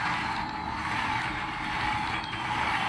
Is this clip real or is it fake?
real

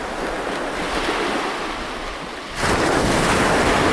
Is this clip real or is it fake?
real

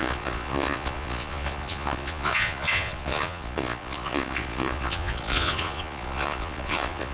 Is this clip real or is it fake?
fake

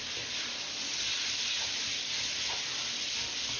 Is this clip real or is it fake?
real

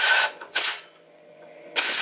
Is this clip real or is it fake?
fake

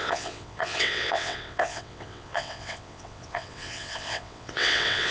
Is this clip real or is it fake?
fake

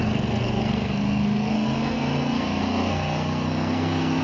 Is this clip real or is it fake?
fake